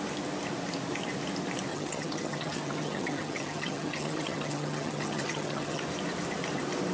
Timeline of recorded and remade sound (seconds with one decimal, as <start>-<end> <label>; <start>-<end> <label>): 0.0-1.7 recorded; 1.7-5.8 remade; 5.8-6.9 recorded